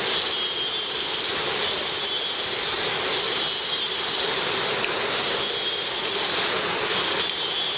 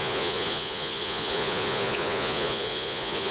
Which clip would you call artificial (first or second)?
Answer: second